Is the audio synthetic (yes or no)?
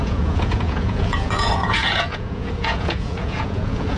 yes